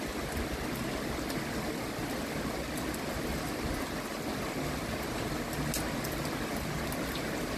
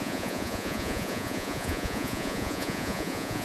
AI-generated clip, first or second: second